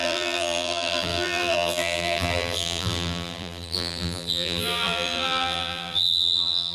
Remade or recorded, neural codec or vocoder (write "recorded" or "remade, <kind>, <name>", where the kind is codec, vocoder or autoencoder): remade, vocoder, BigVGAN v2